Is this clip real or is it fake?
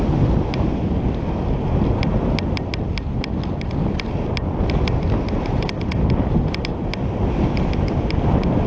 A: real